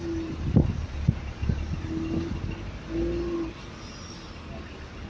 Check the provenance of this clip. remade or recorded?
recorded